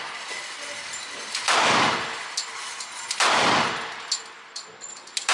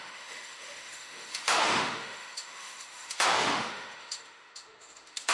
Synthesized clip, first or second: second